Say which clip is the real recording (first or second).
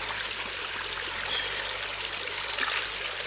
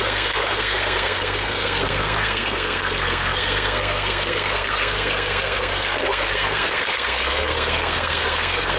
first